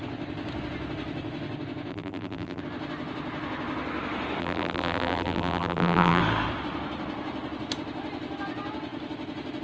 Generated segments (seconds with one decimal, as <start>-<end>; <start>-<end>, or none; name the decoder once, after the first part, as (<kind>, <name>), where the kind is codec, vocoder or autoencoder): 1.9-2.6 (vocoder, BigVGAN v2); 4.4-6.2